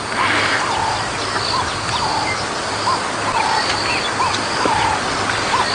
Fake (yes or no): no